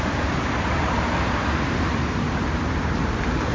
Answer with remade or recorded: remade